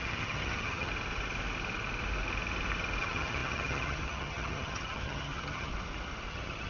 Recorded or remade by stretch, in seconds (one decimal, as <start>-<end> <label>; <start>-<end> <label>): 0.0-0.9 remade; 0.9-3.0 recorded; 3.0-5.7 remade; 5.7-6.3 recorded; 6.3-6.7 remade